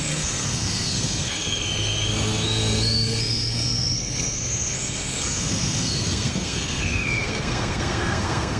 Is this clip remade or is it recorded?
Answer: remade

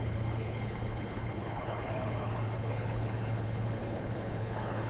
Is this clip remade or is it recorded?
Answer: remade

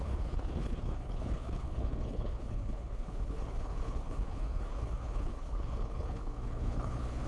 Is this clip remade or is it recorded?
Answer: remade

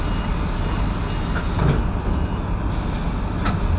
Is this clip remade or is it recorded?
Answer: recorded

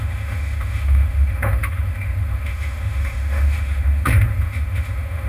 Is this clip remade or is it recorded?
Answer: remade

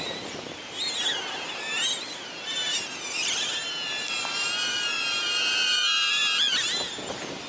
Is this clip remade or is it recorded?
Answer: recorded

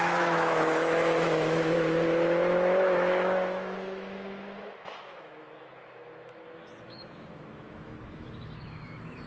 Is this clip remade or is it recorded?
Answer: remade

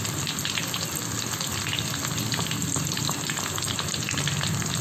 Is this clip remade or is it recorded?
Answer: recorded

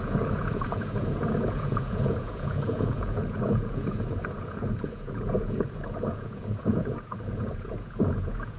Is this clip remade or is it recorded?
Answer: remade